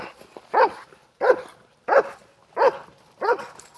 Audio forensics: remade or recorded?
recorded